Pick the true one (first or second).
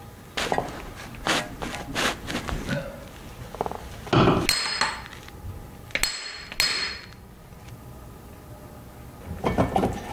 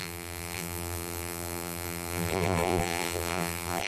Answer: first